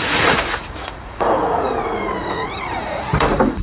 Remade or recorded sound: remade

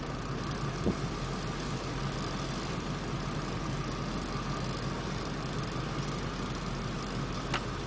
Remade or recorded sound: recorded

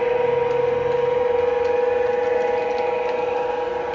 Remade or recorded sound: recorded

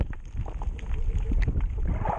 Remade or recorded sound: recorded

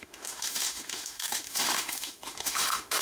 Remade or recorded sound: remade